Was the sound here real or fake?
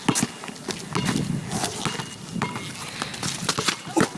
real